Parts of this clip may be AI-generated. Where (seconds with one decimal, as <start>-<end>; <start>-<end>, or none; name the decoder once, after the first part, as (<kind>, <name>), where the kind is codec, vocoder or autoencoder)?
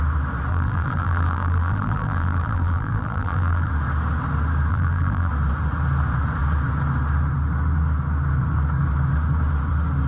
0.5-3.7 (vocoder, BigVGAN v2); 4.7-5.3